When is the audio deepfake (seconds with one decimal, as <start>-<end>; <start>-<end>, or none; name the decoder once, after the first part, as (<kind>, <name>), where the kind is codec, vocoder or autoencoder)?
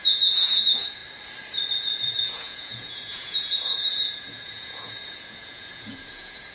0.0-1.0 (vocoder, Vocos); 1.7-6.5